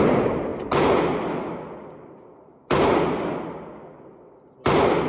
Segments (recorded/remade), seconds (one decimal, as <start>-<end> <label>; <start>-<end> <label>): 0.0-5.1 recorded